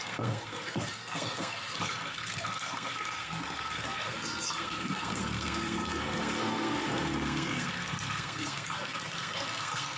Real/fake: fake